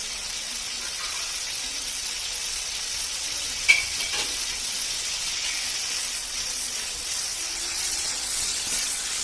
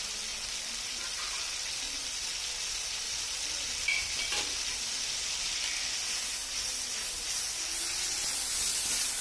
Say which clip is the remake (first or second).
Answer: first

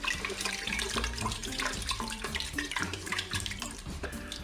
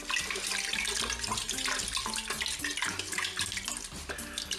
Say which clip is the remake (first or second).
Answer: first